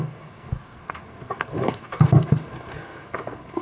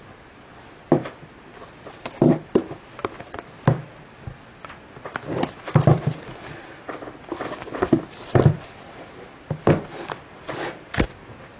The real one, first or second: second